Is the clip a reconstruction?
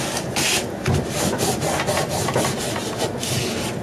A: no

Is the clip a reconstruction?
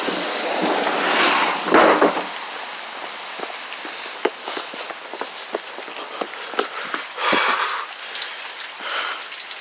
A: no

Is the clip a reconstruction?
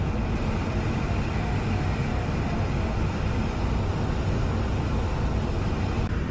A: no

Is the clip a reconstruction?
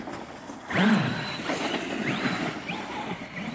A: no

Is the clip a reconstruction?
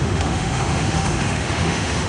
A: yes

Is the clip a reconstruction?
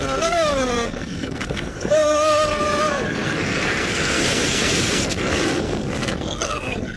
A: yes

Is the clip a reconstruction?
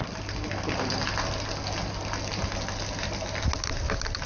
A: no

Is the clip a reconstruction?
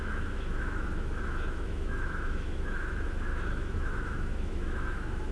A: yes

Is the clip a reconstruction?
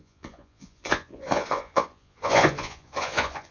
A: yes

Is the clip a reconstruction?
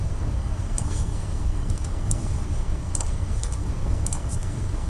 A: yes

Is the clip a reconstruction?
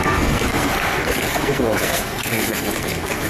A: yes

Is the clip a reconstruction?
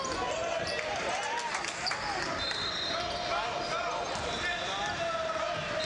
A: no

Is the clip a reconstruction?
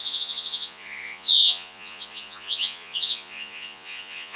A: yes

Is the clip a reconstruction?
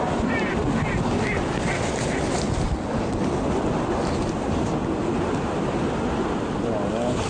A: no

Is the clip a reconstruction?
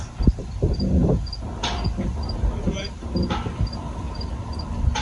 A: no